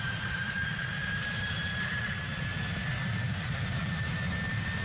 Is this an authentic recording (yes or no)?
no